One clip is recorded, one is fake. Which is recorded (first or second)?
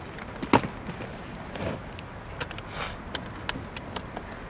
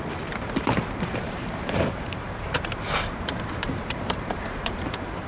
first